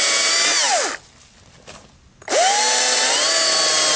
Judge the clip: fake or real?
real